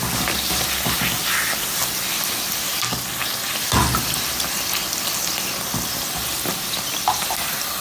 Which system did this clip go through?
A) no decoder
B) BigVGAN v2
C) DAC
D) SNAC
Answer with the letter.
A